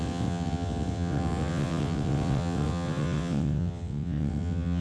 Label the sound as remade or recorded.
remade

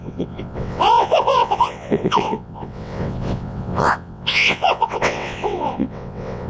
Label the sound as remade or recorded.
remade